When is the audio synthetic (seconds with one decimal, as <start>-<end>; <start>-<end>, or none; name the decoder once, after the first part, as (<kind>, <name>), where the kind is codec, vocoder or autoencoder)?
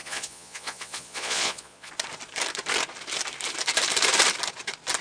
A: 0.0-1.9 (vocoder, Vocos)